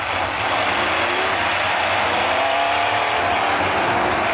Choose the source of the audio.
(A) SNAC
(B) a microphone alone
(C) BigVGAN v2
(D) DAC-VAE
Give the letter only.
B